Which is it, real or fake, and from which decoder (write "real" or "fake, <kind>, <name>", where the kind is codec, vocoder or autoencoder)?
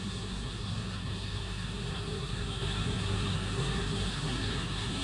fake, codec, SNAC